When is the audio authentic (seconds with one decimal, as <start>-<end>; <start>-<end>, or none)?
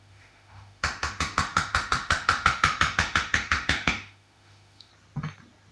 4.9-5.7